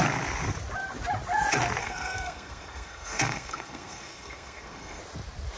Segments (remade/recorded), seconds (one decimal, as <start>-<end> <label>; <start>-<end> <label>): 0.0-1.8 recorded; 1.8-5.0 remade; 5.0-5.6 recorded